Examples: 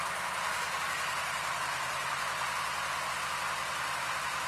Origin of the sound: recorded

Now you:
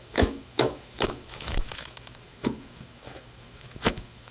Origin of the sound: remade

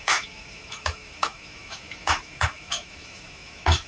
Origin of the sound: remade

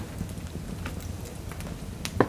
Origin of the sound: recorded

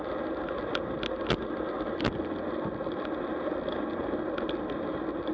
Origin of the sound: recorded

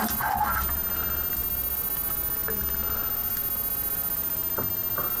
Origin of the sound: recorded